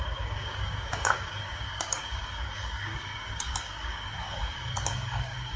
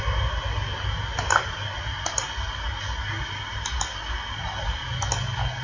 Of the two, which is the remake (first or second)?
first